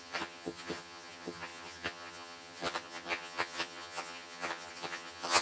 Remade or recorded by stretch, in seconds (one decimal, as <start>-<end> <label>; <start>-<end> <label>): 0.0-5.4 remade